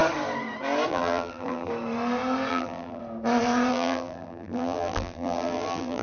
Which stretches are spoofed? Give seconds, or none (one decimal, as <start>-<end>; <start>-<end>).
0.9-1.7; 2.5-3.0; 3.7-6.0